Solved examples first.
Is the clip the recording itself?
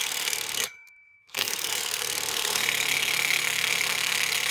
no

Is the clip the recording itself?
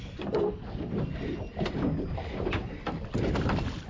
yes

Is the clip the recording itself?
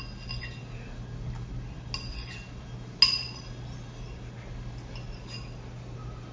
yes